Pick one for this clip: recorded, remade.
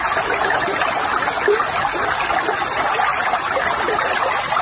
recorded